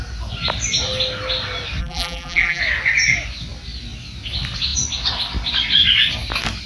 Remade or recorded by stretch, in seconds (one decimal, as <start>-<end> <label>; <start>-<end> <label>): 0.0-1.8 recorded; 1.8-2.6 remade; 2.6-6.7 recorded